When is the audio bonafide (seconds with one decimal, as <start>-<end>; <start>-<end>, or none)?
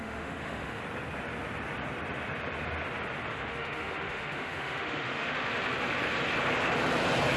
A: 0.8-3.3; 5.5-7.4